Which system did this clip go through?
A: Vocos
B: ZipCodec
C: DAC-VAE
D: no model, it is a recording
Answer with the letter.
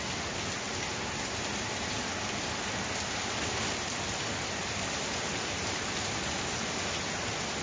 D